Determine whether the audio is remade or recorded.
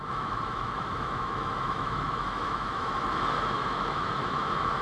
remade